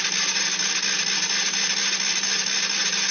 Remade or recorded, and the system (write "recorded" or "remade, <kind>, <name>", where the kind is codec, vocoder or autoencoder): recorded